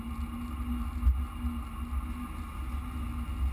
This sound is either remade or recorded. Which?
recorded